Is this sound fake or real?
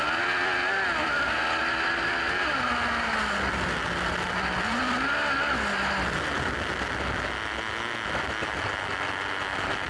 real